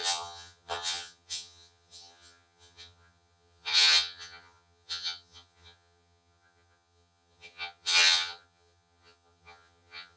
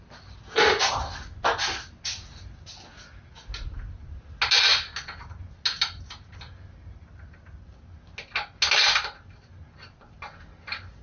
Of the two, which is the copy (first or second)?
first